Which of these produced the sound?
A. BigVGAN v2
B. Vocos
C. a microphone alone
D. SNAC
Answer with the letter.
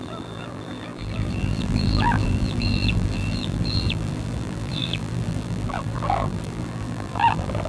A